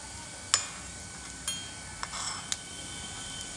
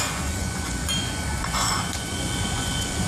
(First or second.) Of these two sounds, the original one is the first